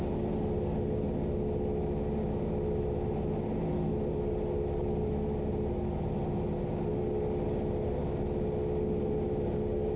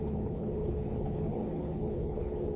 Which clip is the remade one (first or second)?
second